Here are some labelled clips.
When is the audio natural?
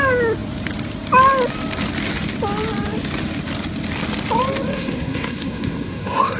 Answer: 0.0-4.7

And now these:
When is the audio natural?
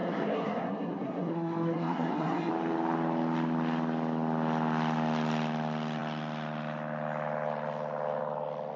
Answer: 2.5-8.8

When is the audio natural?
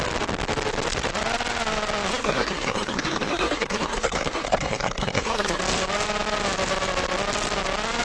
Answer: 0.0-2.1; 5.6-8.0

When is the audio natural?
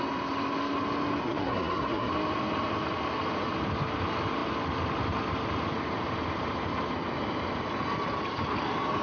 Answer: 0.0-1.2; 2.1-9.0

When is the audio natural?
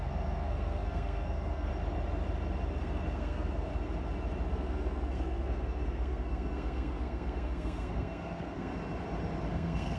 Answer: 1.7-2.8; 3.7-4.5; 8.7-9.5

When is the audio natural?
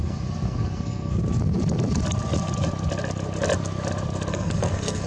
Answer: 1.2-4.3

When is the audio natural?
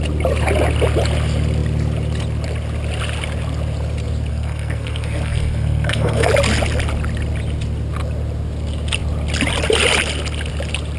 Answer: 0.0-4.3; 6.3-11.0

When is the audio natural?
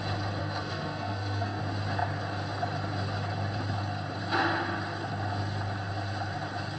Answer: 0.0-0.4; 1.6-6.8